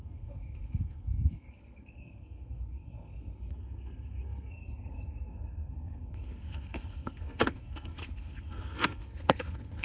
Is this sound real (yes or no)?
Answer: no